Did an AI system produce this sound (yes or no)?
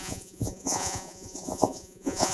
yes